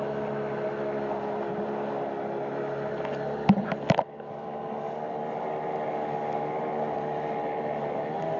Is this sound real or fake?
real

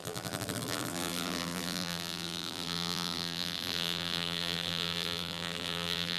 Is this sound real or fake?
fake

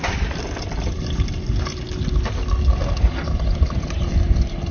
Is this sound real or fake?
real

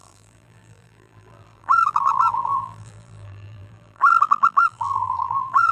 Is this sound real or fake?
fake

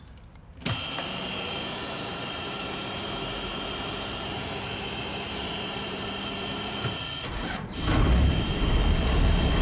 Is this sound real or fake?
fake